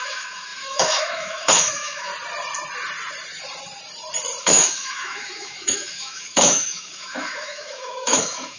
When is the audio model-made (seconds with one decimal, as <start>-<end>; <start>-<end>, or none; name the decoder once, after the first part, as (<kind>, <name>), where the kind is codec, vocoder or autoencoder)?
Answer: 0.0-2.1 (autoencoder, DAC-VAE); 4.4-8.6